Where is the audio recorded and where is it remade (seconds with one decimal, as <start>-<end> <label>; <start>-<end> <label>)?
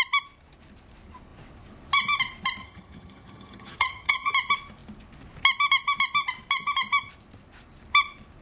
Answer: 0.0-2.6 recorded; 2.6-4.3 remade; 4.3-8.4 recorded